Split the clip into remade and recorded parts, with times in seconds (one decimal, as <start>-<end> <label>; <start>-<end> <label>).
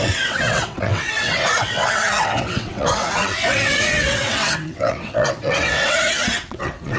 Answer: 0.0-7.0 remade